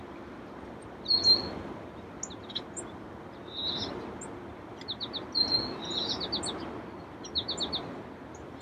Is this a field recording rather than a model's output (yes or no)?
yes